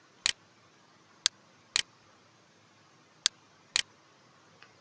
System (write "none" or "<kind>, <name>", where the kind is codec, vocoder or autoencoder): none